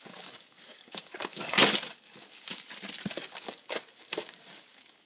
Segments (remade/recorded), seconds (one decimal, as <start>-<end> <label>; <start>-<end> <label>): 0.0-2.5 remade; 2.5-3.1 recorded; 3.1-5.1 remade